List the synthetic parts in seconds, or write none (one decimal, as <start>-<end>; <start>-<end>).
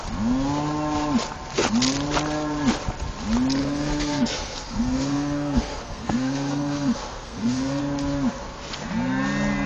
3.6-7.8